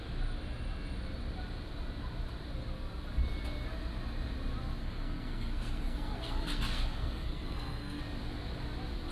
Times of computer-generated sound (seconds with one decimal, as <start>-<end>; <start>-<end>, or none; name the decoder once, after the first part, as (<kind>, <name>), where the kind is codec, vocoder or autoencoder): 4.8-8.0 (codec, SNAC)